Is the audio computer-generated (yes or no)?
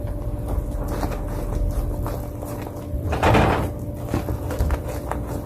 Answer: no